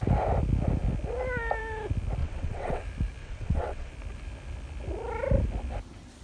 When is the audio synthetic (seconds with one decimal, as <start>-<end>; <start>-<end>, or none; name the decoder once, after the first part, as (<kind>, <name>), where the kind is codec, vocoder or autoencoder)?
2.2-2.8 (vocoder, WaveNeXt); 3.2-3.9